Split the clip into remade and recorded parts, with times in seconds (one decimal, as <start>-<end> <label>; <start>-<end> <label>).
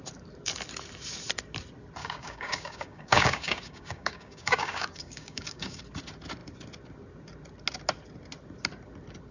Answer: 0.0-2.0 recorded; 2.0-5.8 remade; 5.8-9.3 recorded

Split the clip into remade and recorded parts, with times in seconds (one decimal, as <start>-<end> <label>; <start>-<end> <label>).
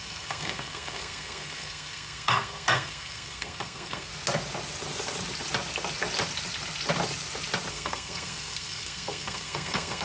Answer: 0.0-4.1 remade; 4.1-7.7 recorded; 7.7-10.0 remade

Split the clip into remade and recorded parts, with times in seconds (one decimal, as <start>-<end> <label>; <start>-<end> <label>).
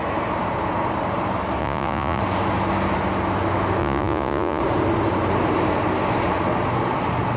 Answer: 0.0-1.6 recorded; 1.6-2.2 remade; 2.2-3.8 recorded; 3.8-4.6 remade; 4.6-7.4 recorded